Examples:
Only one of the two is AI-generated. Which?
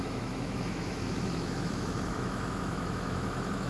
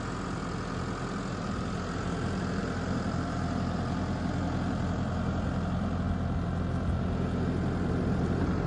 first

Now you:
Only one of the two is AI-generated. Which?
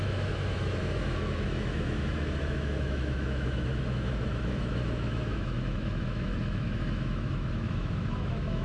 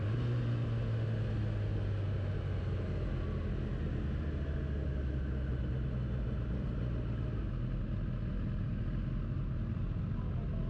first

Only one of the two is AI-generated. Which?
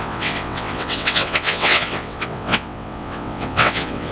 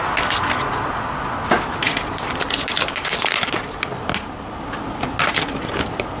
first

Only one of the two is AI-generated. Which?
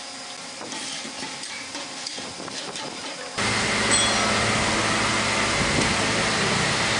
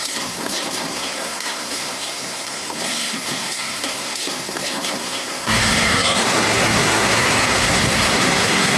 second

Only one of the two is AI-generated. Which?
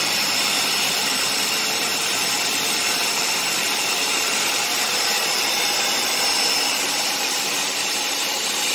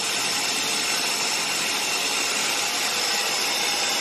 first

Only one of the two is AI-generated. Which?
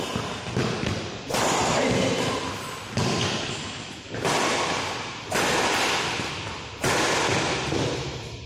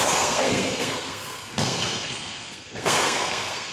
second